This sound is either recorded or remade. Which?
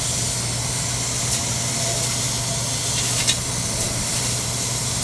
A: recorded